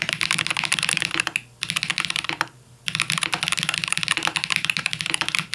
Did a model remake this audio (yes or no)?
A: no